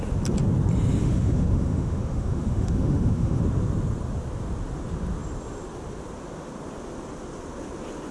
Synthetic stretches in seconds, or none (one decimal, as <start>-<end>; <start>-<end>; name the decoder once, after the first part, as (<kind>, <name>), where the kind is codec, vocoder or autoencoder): 1.0-3.4 (autoencoder, DAC-VAE)